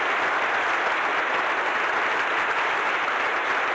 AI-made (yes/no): no